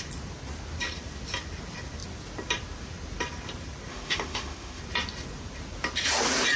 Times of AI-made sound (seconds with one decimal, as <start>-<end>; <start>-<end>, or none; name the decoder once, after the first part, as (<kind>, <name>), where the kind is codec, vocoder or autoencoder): 3.9-4.8 (autoencoder, DAC-VAE)